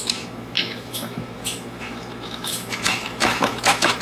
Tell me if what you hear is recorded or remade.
remade